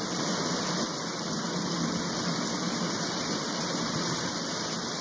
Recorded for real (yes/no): yes